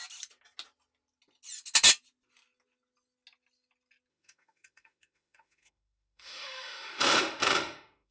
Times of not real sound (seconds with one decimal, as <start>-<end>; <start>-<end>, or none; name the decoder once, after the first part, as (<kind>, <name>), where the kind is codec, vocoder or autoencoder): 4.1-8.1 (autoencoder, DAC-VAE)